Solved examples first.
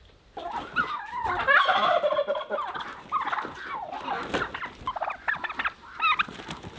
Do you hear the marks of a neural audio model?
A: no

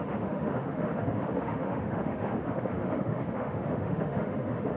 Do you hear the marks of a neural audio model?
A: yes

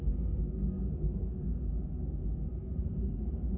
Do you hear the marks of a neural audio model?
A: yes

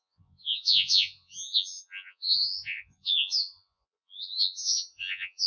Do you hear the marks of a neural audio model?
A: yes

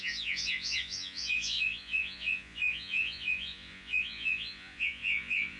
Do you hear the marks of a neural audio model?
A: yes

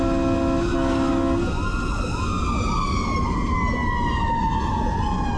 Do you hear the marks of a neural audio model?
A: no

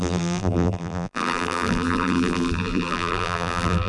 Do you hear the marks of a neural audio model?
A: yes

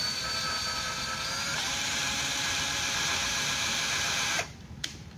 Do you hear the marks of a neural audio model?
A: yes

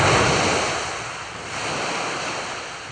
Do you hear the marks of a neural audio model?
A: no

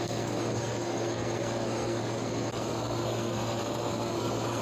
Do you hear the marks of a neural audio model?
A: yes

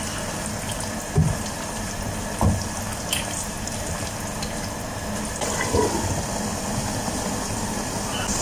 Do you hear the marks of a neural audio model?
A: no